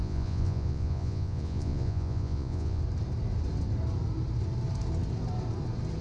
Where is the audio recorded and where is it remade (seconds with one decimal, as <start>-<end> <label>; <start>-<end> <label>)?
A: 0.0-2.8 remade; 2.8-6.0 recorded